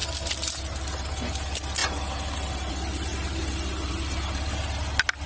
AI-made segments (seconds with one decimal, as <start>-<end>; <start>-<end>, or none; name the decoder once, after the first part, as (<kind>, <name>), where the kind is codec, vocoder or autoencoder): none